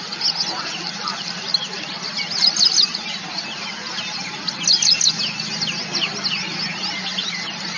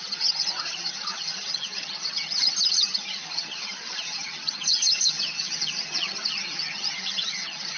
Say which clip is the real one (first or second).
first